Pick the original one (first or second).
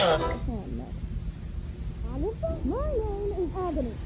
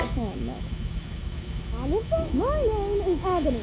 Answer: first